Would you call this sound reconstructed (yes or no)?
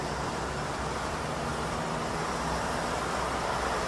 no